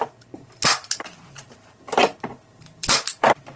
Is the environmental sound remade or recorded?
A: remade